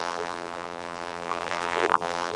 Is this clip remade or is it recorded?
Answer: remade